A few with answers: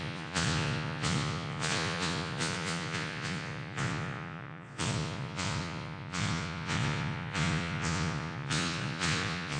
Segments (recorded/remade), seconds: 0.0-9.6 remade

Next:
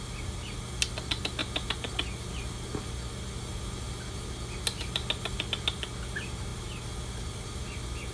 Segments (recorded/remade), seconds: 0.0-8.1 recorded

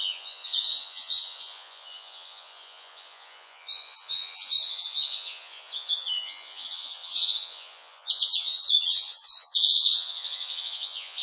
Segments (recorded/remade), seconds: 0.0-11.2 remade

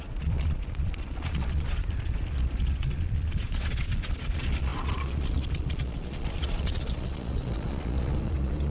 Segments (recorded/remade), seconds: 0.0-8.7 remade

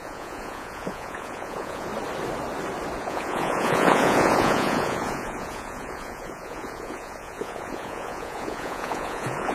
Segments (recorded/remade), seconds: 0.0-1.9 remade; 1.9-3.0 recorded; 3.0-9.5 remade

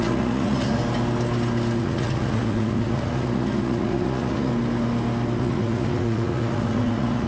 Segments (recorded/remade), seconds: 0.0-0.8 remade; 0.8-1.8 recorded; 1.8-4.5 remade; 4.5-5.4 recorded; 5.4-7.3 remade